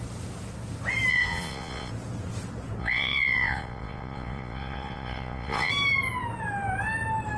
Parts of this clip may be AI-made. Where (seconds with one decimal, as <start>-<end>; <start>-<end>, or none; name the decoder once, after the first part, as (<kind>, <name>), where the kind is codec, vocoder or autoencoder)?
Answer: 1.1-1.9 (vocoder, Vocos); 2.8-5.7